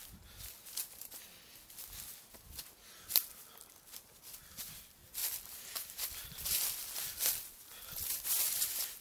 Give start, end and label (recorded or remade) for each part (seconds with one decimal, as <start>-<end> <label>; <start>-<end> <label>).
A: 0.0-4.2 recorded; 4.2-5.2 remade; 5.2-5.8 recorded; 5.8-6.8 remade; 6.8-7.7 recorded; 7.7-9.0 remade